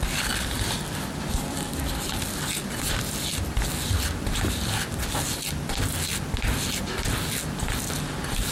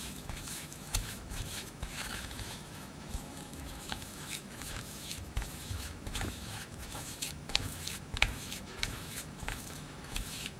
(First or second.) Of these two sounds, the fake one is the second